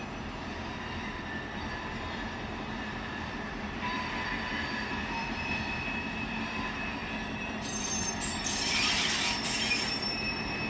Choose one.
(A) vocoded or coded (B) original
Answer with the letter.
A